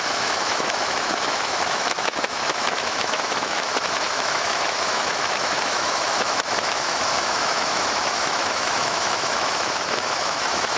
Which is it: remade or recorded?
remade